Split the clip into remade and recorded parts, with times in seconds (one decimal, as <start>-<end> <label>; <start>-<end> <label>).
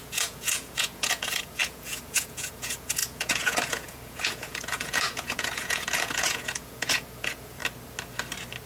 0.0-7.6 remade; 7.6-8.7 recorded